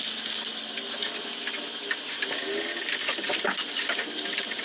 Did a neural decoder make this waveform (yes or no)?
no